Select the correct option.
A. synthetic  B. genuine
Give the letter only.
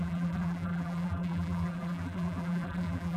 A